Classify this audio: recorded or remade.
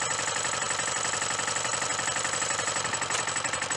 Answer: recorded